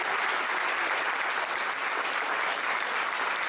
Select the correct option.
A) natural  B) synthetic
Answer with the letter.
A